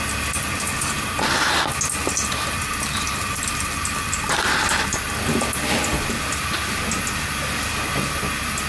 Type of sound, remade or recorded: recorded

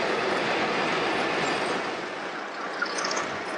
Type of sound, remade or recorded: remade